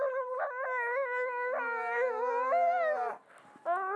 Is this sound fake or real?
real